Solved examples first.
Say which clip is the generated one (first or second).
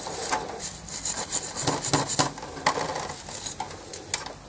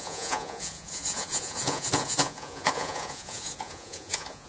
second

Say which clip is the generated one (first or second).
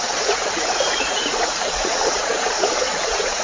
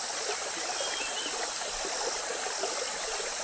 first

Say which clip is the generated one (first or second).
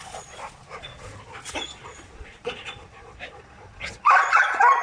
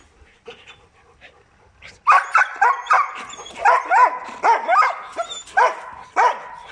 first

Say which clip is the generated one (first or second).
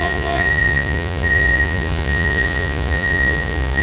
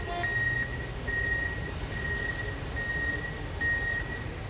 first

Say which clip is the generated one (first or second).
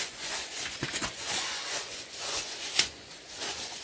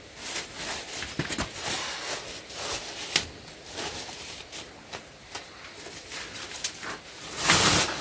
first